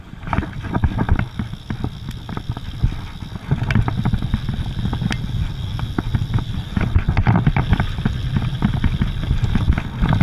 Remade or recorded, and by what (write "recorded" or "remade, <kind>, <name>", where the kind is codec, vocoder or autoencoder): recorded